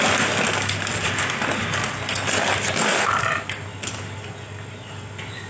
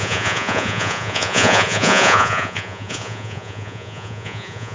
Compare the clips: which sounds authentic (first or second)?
first